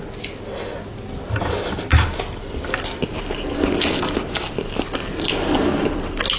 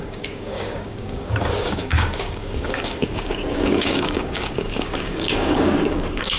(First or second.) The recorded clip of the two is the first